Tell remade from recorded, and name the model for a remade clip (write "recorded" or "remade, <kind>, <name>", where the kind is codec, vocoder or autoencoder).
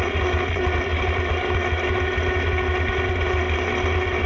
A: recorded